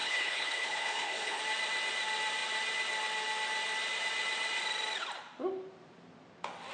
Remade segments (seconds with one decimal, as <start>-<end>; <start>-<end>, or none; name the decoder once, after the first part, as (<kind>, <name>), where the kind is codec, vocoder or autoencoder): 0.0-1.4 (codec, HILCodec)